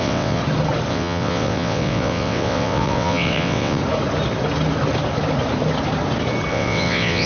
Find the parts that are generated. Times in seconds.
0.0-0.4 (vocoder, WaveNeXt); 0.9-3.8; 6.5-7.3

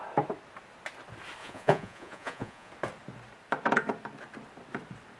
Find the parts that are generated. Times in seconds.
1.4-2.7 (vocoder, Vocos)